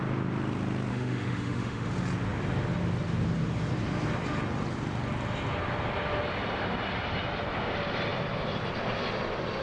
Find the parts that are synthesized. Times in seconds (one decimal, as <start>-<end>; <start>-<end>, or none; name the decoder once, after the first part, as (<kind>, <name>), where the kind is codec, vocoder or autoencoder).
0.9-1.9 (autoencoder, DAC-VAE)